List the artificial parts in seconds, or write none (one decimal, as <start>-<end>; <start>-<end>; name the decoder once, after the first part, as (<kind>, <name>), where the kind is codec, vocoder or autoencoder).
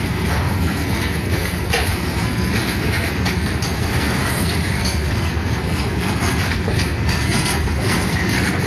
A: 0.0-8.7 (codec, SNAC)